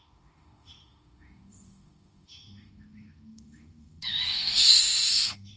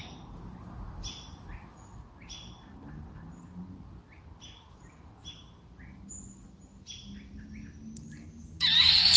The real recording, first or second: second